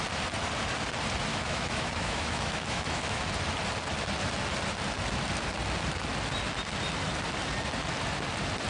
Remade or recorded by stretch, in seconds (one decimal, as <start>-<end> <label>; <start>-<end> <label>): 0.0-1.3 recorded; 1.3-3.2 remade; 3.2-8.7 recorded